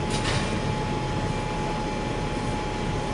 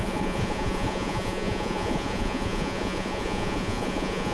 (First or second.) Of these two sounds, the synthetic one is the second